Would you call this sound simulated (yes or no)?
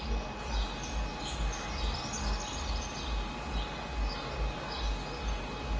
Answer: no